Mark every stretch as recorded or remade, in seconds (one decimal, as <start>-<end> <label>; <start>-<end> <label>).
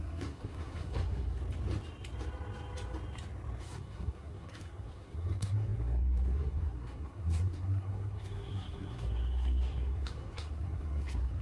0.0-1.4 remade; 1.4-3.6 recorded; 3.6-11.4 remade